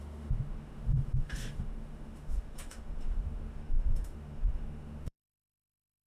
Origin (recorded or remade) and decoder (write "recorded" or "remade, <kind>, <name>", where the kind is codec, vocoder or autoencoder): remade, autoencoder, DAC-VAE